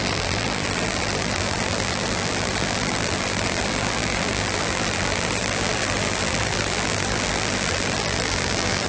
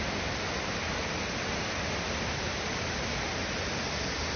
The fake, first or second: first